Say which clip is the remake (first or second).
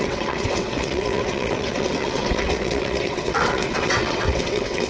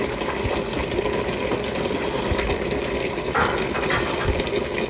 first